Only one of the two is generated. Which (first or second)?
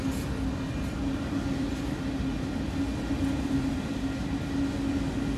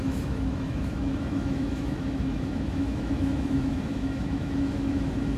second